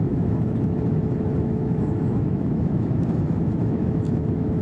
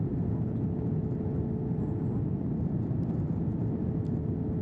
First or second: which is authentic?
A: second